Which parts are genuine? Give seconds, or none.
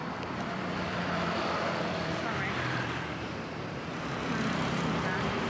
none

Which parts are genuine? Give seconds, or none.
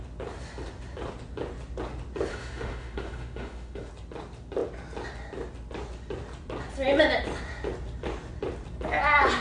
0.0-2.3; 3.9-9.4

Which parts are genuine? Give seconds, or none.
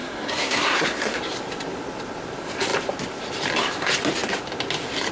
1.2-5.1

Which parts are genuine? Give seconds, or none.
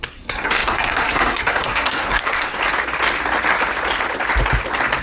2.6-5.0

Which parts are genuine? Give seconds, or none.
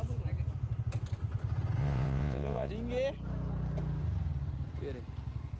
0.0-1.8; 2.7-5.6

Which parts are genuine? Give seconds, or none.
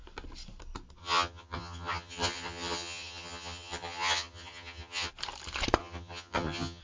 0.0-1.0; 5.1-5.8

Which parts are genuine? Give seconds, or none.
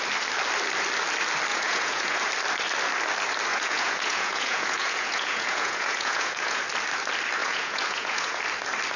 0.0-1.5; 2.2-3.5; 6.6-7.4; 8.4-9.0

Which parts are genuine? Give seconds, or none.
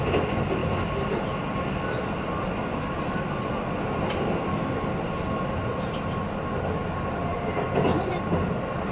0.0-8.9